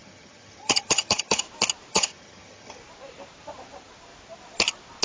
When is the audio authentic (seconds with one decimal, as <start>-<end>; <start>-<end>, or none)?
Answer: 1.4-1.9; 2.8-5.0